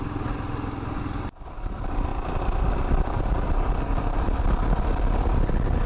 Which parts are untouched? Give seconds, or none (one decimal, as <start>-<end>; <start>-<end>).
0.0-2.1; 5.0-5.9